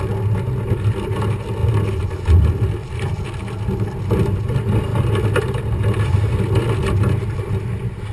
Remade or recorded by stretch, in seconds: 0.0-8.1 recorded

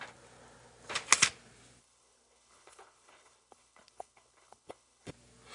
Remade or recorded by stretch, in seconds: 0.0-1.8 recorded; 1.8-5.1 remade; 5.1-5.5 recorded